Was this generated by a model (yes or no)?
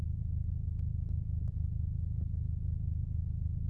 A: no